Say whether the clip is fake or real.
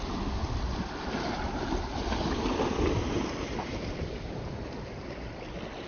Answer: real